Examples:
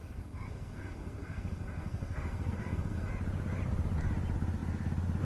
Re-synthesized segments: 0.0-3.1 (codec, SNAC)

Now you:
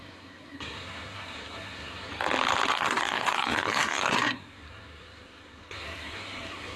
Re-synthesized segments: 0.0-2.1 (codec, SNAC); 2.7-6.8

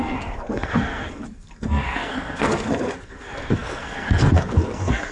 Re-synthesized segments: 0.0-5.1 (codec, SNAC)

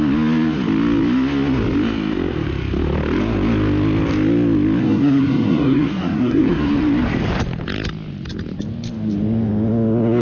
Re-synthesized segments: 4.8-6.7 (codec, SNAC)